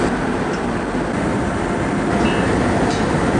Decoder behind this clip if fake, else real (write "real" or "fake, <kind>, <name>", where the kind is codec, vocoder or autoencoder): real